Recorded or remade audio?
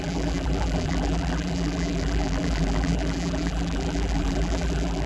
remade